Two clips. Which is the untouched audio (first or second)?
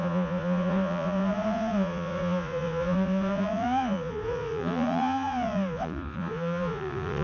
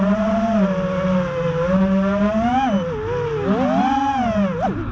second